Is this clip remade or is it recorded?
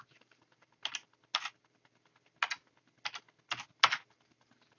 recorded